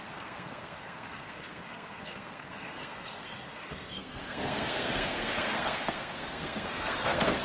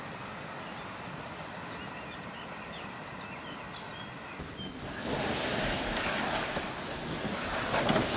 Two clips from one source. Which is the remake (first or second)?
first